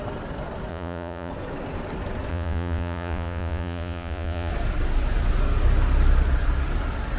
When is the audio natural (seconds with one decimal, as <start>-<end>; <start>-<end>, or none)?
0.0-0.7; 1.3-2.3; 4.5-7.2

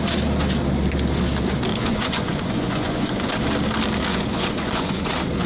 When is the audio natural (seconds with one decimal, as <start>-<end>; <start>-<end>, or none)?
0.0-1.7; 3.3-4.1; 5.1-5.5

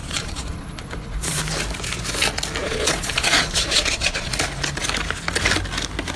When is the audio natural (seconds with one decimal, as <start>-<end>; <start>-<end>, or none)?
1.4-2.6; 4.3-6.2

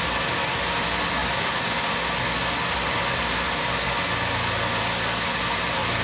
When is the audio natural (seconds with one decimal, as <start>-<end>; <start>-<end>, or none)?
0.0-6.0

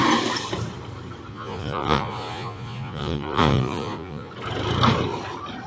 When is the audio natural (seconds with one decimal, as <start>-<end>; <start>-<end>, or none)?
0.0-1.3; 4.3-5.7

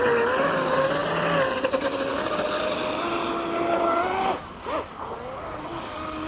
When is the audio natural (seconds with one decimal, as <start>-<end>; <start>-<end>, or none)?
0.0-6.3

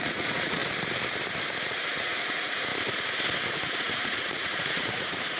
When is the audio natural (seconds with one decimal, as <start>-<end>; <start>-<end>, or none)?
0.6-1.6; 2.7-3.5